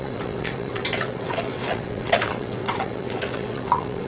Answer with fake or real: fake